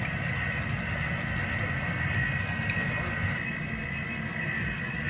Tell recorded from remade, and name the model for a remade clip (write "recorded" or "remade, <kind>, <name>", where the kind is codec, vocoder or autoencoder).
recorded